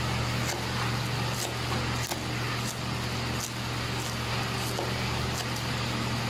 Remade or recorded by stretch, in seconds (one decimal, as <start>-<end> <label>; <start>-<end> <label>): 0.0-6.3 recorded